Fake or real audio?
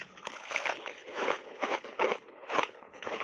fake